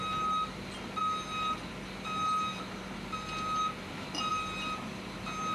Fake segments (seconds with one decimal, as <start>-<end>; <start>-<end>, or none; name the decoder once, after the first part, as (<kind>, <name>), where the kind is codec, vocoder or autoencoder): none